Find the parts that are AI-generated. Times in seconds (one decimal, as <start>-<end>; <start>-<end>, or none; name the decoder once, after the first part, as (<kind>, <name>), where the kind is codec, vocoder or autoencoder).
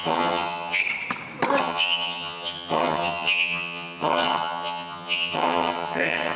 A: 0.0-0.8 (vocoder, HiFi-GAN); 1.6-6.4